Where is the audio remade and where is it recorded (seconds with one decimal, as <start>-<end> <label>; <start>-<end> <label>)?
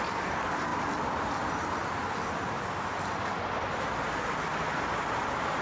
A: 0.0-0.7 remade; 0.7-3.9 recorded; 3.9-5.6 remade